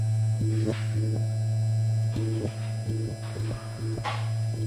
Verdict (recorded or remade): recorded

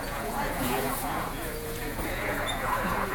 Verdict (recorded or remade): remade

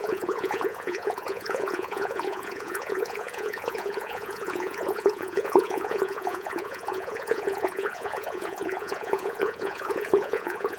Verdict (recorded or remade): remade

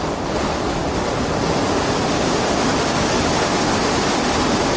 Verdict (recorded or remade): recorded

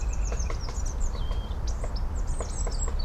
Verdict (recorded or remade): recorded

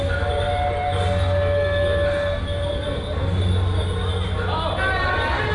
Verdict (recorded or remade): recorded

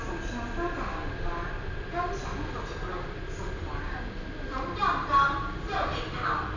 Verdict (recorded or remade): recorded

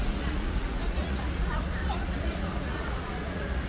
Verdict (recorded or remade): remade